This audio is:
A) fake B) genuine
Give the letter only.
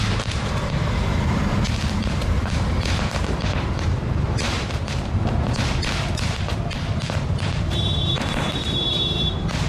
A